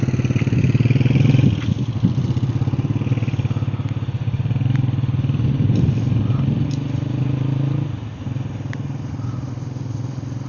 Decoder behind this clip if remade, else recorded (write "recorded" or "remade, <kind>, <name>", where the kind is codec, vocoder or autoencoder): recorded